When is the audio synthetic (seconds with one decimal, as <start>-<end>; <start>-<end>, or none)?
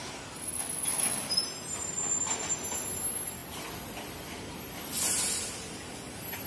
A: none